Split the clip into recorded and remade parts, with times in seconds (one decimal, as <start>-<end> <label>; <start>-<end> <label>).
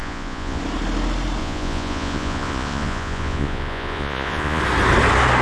0.0-0.6 remade; 0.6-1.4 recorded; 1.4-4.6 remade; 4.6-5.4 recorded